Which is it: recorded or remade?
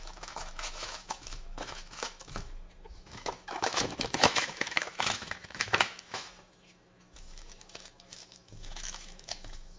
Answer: remade